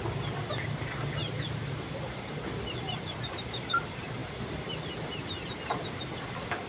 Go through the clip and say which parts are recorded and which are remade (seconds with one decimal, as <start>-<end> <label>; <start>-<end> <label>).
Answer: 0.0-6.7 recorded